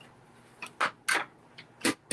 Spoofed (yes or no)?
no